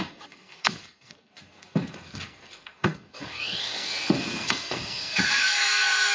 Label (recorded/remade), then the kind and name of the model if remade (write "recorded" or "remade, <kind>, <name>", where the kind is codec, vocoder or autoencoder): remade, codec, SNAC